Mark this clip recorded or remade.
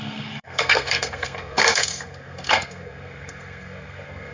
remade